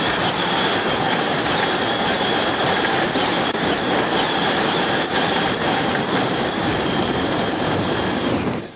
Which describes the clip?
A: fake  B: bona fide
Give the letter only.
A